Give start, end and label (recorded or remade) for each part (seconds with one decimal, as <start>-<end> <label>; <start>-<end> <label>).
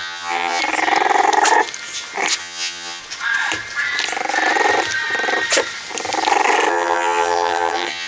0.0-0.6 remade; 0.6-2.4 recorded; 2.4-3.0 remade; 3.0-6.7 recorded; 6.7-8.1 remade